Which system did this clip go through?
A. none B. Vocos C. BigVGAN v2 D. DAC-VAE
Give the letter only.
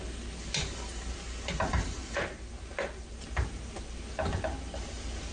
A